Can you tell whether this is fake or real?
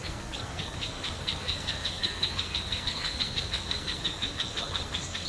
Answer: fake